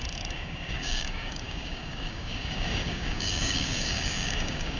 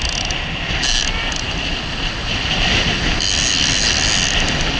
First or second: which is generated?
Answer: first